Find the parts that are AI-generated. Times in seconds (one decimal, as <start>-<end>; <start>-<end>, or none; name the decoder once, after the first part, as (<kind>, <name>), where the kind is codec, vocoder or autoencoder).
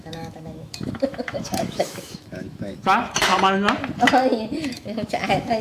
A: 0.0-3.3 (autoencoder, DAC-VAE); 4.6-5.6